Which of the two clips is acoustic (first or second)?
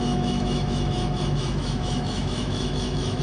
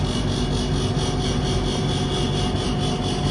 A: second